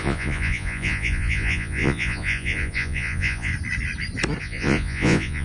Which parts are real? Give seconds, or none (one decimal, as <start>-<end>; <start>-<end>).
3.5-4.4